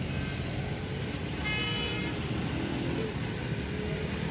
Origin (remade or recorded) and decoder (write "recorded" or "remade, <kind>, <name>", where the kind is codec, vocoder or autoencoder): recorded